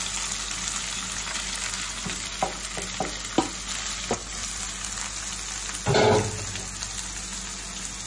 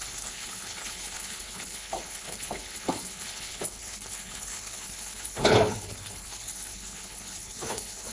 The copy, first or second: second